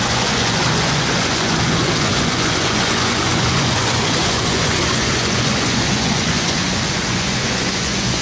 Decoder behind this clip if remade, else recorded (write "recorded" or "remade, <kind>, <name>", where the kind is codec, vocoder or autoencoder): remade, vocoder, Vocos